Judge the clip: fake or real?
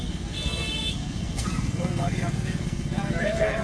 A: fake